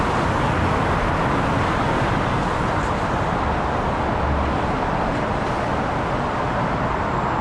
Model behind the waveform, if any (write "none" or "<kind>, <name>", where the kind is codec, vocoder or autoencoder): none